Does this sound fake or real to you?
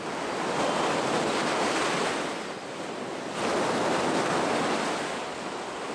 real